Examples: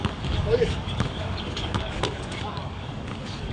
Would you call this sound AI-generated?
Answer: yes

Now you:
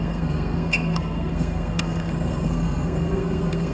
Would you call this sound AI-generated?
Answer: yes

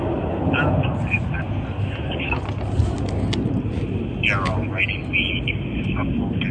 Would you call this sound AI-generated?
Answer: no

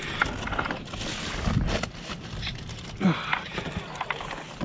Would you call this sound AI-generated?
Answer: no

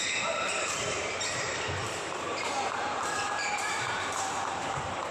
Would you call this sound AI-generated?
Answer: yes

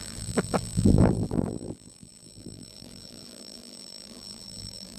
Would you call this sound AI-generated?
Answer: yes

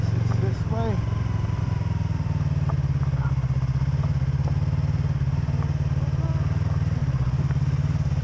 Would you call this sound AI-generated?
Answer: no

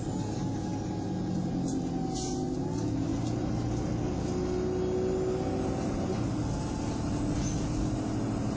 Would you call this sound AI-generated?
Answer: no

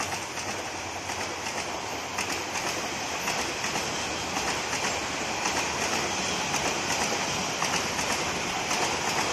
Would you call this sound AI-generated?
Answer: no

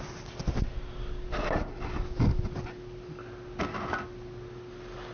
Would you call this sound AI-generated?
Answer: no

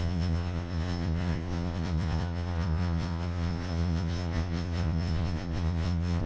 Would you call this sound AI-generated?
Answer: yes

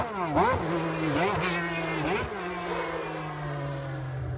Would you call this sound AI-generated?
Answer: no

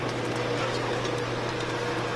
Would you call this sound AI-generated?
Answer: no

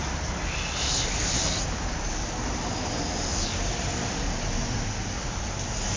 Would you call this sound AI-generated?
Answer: no